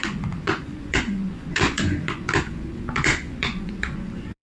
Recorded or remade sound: remade